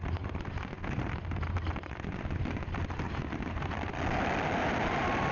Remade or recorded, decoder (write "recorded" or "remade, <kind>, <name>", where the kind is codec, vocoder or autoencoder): recorded